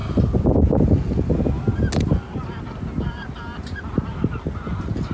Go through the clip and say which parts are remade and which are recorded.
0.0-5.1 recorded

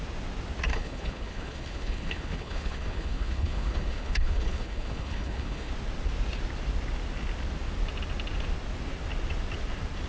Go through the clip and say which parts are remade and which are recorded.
0.0-0.7 recorded; 0.7-5.7 remade; 5.7-10.1 recorded

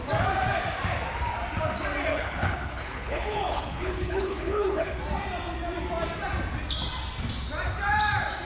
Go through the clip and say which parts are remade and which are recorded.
0.0-2.1 recorded; 2.1-5.0 remade; 5.0-8.5 recorded

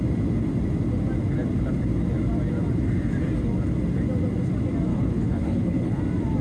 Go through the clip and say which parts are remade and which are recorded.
0.0-4.9 recorded; 4.9-6.0 remade; 6.0-6.4 recorded